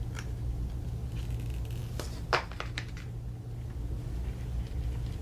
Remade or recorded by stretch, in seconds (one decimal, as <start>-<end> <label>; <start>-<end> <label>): 0.0-5.2 recorded